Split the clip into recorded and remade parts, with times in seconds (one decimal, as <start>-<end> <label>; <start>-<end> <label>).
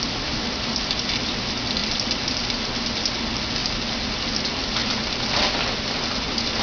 0.0-6.6 recorded